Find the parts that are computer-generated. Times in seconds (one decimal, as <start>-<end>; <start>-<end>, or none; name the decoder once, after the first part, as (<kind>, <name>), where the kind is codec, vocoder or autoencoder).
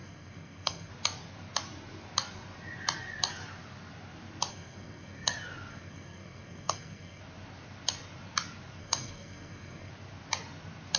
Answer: 0.0-0.9 (codec, SNAC); 4.5-5.3; 5.7-7.2; 8.8-9.9